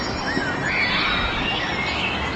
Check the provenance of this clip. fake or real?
real